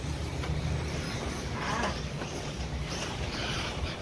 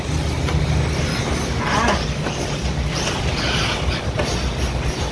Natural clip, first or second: second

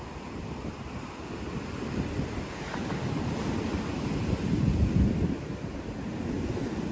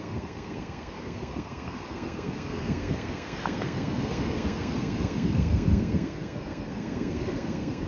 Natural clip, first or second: first